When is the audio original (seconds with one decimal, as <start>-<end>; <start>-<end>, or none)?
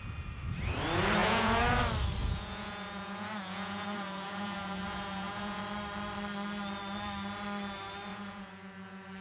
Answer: 0.0-1.2; 1.8-2.2; 5.6-8.1